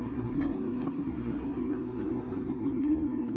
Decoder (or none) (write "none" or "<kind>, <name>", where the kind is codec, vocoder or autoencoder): codec, SNAC